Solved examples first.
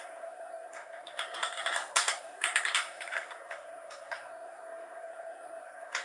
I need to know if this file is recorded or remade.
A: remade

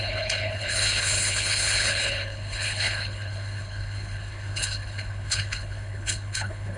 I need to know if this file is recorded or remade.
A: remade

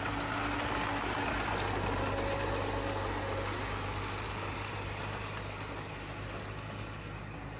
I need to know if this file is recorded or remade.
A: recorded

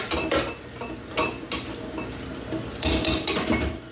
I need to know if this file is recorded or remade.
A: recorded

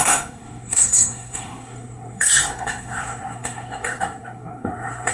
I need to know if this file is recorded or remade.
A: remade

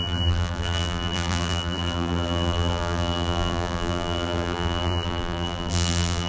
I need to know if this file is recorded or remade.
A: remade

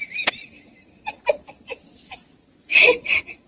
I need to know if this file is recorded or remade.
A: recorded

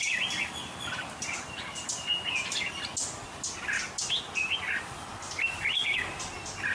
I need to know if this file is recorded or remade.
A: recorded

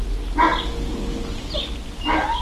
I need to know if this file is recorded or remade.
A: recorded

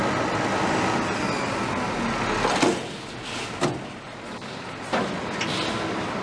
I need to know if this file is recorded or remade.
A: recorded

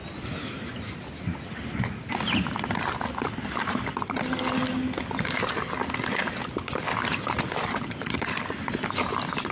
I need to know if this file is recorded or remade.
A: recorded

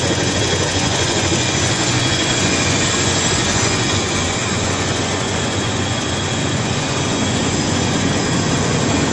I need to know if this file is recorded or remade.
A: remade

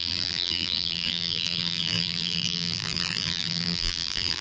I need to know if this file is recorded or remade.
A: remade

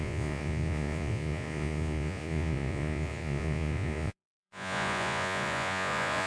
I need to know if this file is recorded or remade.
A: remade